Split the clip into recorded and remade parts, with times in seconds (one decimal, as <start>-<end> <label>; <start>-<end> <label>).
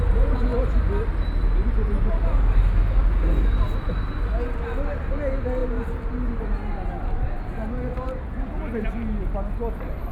0.0-10.1 recorded